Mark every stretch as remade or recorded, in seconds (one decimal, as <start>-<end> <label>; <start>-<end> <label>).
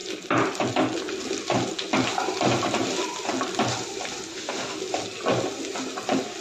0.0-4.3 recorded; 4.3-4.8 remade; 4.8-6.4 recorded